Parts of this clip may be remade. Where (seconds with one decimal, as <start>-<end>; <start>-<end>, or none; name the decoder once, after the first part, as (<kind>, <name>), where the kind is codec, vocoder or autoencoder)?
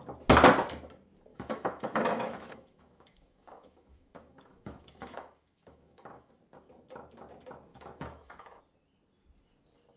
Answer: 1.3-6.3 (autoencoder, DAC-VAE); 7.7-8.6